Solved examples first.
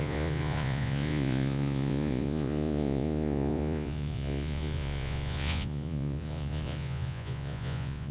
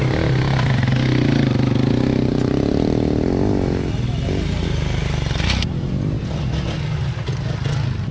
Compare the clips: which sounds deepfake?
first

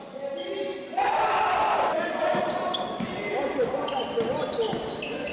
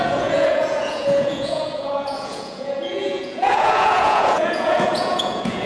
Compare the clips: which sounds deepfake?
second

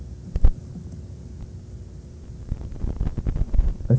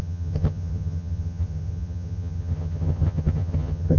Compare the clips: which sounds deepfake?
second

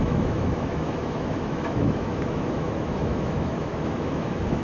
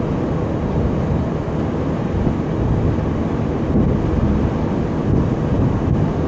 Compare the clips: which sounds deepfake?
first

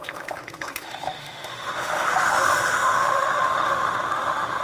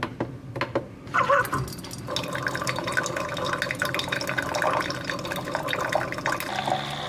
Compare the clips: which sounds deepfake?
first